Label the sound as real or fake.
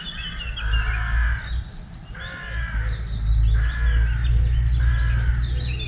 real